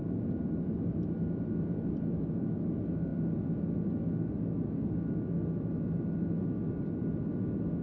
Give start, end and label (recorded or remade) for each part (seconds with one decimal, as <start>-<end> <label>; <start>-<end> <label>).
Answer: 0.0-7.8 recorded